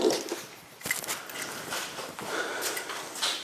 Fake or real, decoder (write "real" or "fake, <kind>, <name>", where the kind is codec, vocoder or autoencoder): real